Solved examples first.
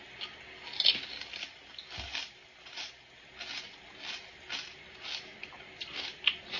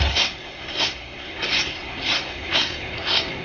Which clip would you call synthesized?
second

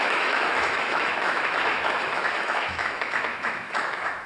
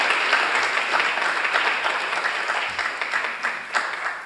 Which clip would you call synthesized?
first